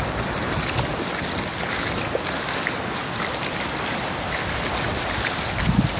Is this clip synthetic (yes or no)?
no